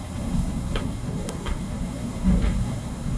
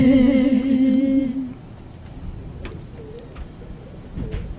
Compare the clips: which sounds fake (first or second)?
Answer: first